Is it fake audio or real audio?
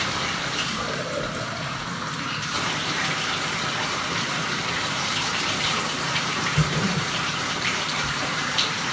fake